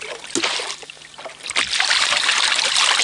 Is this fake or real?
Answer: real